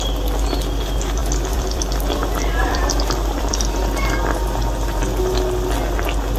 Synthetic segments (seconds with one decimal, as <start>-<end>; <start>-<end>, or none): 1.2-5.0